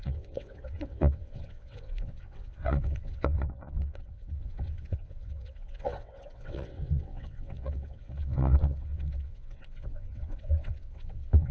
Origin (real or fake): fake